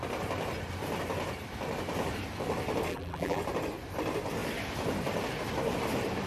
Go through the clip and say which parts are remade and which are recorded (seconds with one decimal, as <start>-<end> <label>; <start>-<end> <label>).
0.0-2.9 recorded; 2.9-3.4 remade; 3.4-6.3 recorded

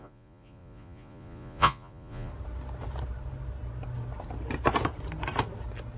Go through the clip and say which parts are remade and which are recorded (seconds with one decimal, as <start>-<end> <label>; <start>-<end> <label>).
0.0-2.3 remade; 2.3-6.0 recorded

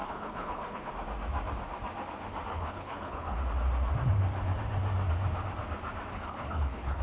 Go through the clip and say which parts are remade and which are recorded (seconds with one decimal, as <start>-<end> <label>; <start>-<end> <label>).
0.0-0.9 remade; 0.9-2.5 recorded; 2.5-3.4 remade; 3.4-6.1 recorded; 6.1-7.0 remade

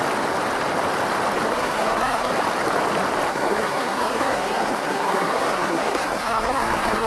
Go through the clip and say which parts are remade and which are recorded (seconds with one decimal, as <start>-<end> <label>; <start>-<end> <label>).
0.0-1.5 recorded; 1.5-2.3 remade; 2.3-3.3 recorded; 3.3-7.1 remade

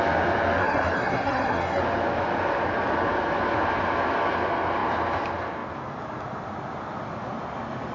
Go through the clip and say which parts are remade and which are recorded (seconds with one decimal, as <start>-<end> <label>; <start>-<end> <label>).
0.0-0.6 recorded; 0.6-1.8 remade; 1.8-7.9 recorded

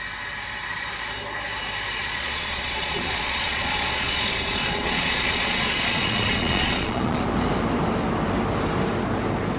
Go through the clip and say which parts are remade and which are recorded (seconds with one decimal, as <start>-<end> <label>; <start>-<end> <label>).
0.0-2.0 recorded; 2.0-7.2 remade; 7.2-9.6 recorded